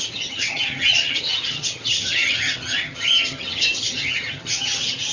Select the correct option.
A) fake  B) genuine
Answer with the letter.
A